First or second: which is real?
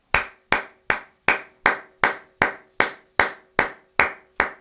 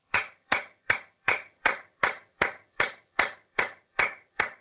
first